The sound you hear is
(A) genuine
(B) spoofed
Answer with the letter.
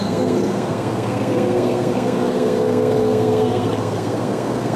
B